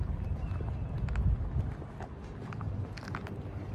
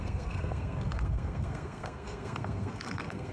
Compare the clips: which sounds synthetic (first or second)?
second